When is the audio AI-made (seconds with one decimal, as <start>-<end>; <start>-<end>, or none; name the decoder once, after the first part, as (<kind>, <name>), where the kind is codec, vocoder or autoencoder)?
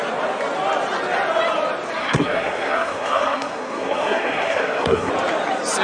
2.0-5.1 (codec, SNAC)